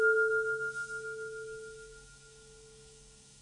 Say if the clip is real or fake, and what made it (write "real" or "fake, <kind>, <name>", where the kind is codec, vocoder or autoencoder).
fake, codec, DAC